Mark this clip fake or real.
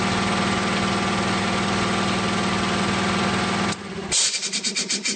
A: real